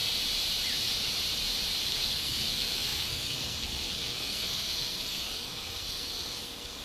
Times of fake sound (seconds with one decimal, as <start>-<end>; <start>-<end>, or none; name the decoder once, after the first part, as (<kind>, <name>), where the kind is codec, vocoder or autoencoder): 1.9-6.8 (codec, SNAC)